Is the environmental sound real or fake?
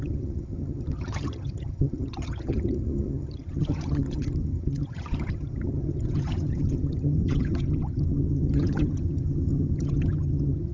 fake